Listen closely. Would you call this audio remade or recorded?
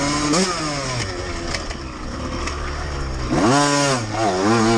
recorded